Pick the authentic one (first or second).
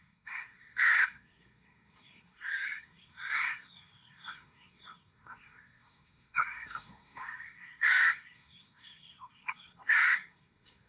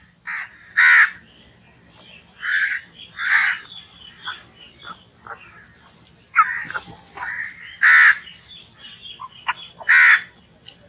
second